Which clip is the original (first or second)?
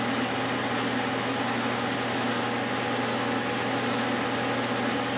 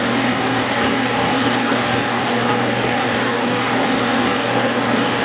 first